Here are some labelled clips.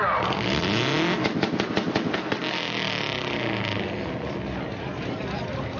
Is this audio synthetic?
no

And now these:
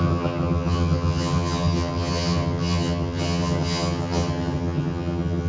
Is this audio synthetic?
yes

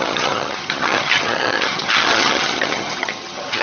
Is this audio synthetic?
yes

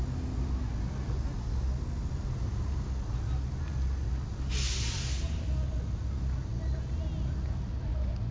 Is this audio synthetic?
no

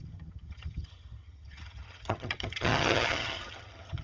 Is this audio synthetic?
yes